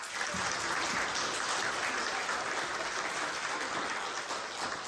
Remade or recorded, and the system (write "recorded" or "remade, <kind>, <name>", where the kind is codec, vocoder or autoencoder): recorded